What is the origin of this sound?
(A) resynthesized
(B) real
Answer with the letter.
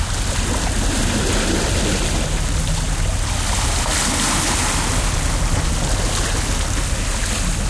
B